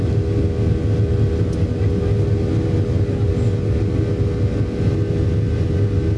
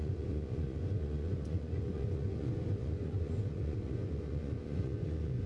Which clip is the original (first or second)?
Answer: first